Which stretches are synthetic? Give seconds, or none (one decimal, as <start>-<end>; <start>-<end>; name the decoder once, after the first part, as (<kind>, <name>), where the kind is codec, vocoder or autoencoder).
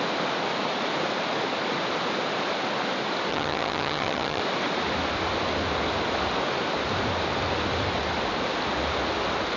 3.3-4.4 (vocoder, HiFi-GAN)